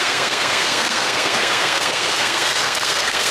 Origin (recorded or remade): remade